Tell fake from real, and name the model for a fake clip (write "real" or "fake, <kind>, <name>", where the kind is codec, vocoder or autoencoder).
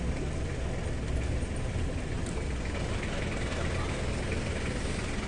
real